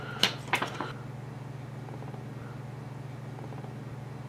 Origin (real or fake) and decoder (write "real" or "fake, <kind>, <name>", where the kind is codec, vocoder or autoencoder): real